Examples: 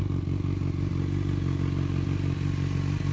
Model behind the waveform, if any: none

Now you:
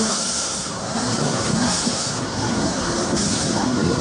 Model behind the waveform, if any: codec, SNAC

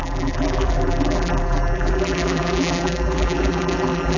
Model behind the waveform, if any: vocoder, BigVGAN v2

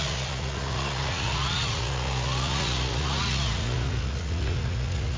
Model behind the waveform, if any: vocoder, Vocos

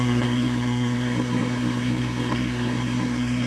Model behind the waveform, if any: codec, SNAC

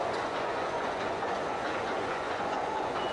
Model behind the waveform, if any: vocoder, Vocos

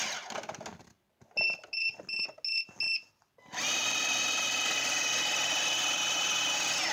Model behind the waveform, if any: none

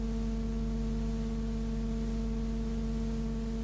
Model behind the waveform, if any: none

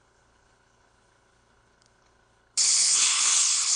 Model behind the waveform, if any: codec, HILCodec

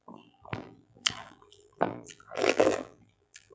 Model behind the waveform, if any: vocoder, BigVGAN v2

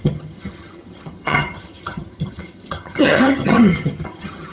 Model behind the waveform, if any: vocoder, HiFi-GAN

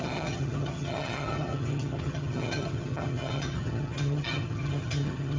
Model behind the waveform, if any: vocoder, HiFi-GAN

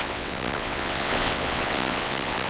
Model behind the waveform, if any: vocoder, WaveNeXt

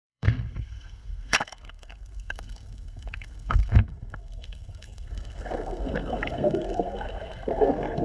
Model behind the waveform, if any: codec, SNAC